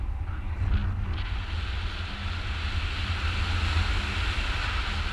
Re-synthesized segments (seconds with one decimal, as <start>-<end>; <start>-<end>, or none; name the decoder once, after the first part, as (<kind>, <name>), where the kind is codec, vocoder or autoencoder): none